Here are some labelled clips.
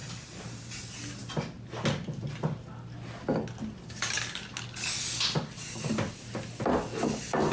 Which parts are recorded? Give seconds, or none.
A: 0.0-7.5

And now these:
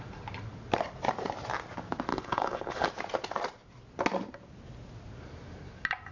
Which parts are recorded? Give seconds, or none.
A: 0.0-2.1; 2.9-6.1

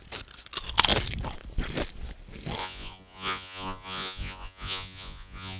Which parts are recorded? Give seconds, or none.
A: 0.0-2.6

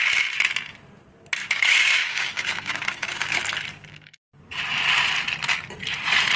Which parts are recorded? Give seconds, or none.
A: 0.0-1.4; 3.4-3.9; 4.6-6.4

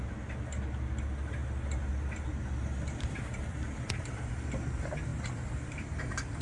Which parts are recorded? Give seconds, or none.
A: 0.0-6.4

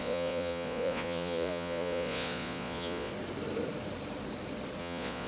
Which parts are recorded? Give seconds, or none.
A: 3.1-4.8